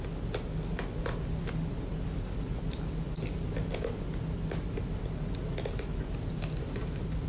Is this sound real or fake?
real